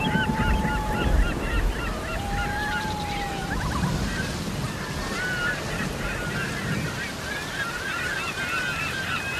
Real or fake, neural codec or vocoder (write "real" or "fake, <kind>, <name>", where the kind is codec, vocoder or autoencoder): fake, vocoder, BigVGAN v2